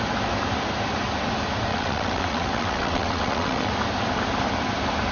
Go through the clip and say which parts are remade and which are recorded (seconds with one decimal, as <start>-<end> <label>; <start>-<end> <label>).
0.0-1.7 recorded; 1.7-3.7 remade; 3.7-5.1 recorded